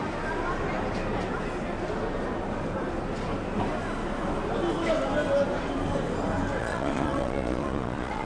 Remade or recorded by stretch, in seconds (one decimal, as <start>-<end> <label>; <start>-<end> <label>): 0.0-6.6 recorded; 6.6-8.3 remade